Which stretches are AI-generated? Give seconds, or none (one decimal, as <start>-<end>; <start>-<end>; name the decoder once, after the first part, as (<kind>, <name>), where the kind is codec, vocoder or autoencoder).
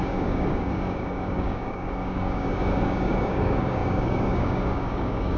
0.0-5.4 (codec, DAC)